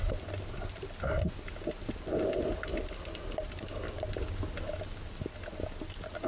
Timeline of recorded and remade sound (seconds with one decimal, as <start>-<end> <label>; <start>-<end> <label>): 0.0-6.3 recorded